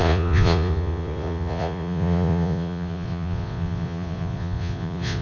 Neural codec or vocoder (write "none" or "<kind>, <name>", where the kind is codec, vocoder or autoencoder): vocoder, Vocos